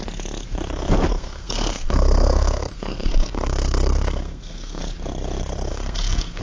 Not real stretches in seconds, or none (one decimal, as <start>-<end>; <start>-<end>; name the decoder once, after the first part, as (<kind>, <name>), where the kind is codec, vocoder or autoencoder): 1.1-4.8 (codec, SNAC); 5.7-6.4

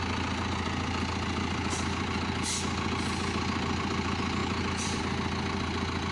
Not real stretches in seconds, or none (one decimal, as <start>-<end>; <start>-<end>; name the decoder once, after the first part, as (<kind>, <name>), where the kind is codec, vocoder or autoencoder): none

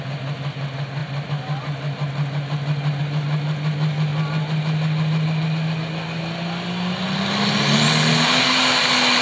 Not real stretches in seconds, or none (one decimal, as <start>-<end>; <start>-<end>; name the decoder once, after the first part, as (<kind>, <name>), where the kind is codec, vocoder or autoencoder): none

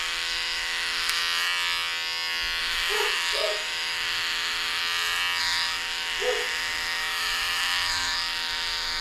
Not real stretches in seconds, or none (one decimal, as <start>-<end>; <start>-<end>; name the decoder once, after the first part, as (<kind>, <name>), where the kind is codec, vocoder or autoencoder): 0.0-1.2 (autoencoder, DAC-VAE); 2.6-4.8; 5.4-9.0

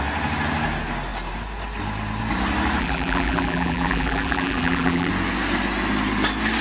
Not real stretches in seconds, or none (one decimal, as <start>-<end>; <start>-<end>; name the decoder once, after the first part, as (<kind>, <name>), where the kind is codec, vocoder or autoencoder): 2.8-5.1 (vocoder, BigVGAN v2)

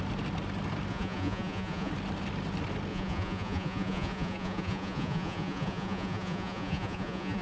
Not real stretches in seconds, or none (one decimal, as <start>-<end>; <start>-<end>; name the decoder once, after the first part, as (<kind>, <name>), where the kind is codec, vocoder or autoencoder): 0.9-1.9 (vocoder, Vocos); 2.9-7.4